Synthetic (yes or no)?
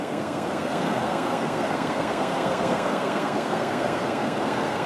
yes